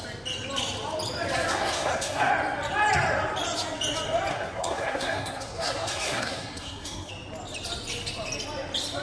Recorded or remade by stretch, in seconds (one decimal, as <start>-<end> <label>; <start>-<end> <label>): 0.0-1.5 recorded; 1.5-2.3 remade; 2.3-4.3 recorded; 4.3-7.1 remade; 7.1-9.0 recorded